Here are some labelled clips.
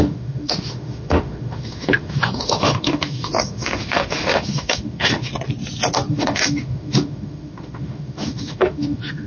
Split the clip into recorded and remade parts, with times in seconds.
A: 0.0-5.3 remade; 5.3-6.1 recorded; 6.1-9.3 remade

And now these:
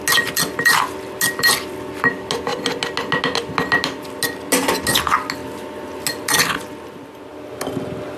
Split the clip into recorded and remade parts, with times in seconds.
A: 0.0-8.2 recorded

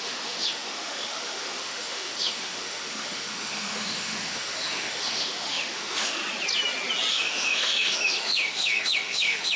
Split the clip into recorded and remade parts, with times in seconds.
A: 0.0-6.2 remade; 6.2-7.1 recorded; 7.1-9.6 remade

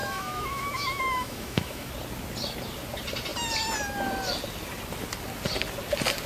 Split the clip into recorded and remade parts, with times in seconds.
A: 0.0-1.9 remade; 1.9-6.3 recorded

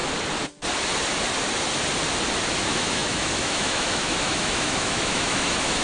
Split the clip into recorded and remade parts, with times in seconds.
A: 0.0-2.6 recorded; 2.6-5.8 remade

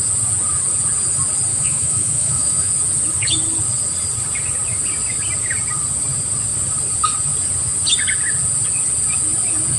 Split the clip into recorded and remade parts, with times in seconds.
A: 0.0-1.5 recorded; 1.5-2.7 remade; 2.7-9.8 recorded